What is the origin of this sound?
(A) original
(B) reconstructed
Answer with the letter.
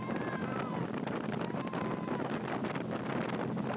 A